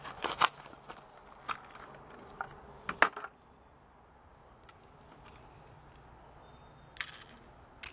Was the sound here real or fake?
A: real